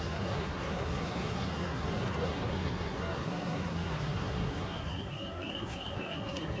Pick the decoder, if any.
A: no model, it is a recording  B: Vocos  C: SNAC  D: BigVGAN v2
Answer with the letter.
C